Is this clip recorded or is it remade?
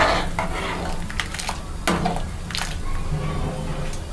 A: recorded